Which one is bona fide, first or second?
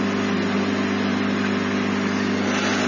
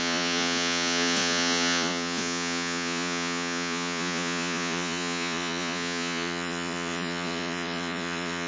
first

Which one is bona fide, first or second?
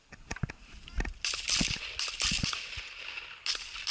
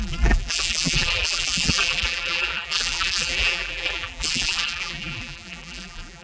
first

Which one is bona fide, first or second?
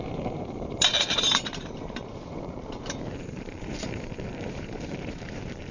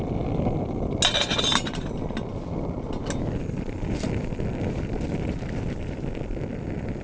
second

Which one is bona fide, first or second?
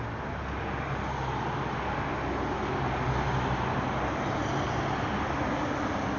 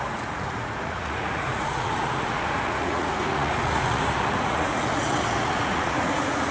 first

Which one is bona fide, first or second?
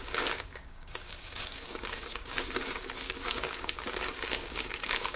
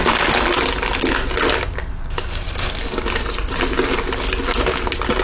second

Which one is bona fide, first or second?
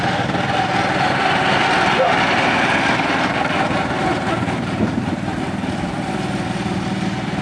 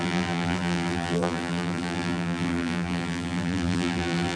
first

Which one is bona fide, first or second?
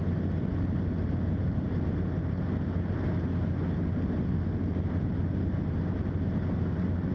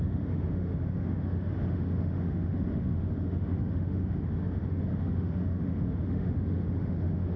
first